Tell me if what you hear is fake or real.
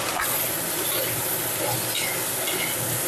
real